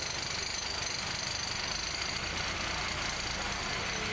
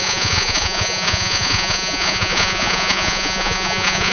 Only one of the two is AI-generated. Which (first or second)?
second